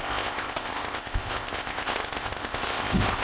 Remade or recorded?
remade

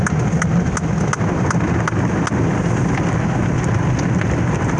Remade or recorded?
recorded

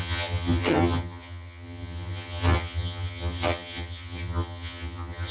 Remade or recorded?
remade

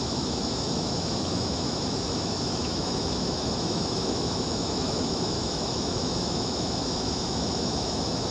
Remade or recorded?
remade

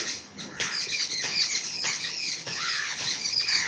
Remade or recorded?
remade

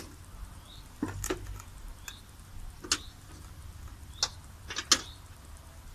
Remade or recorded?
recorded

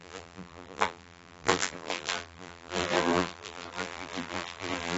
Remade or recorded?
remade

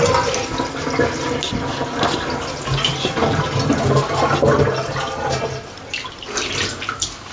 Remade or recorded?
recorded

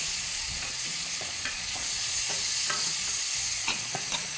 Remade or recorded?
remade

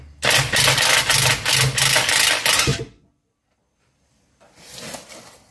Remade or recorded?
recorded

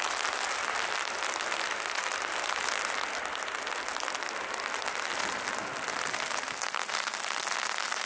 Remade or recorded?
recorded